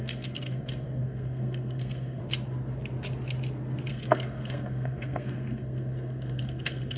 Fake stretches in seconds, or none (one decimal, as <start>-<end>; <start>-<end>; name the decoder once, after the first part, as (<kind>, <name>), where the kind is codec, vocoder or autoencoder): 0.0-2.2 (codec, SNAC); 3.9-7.0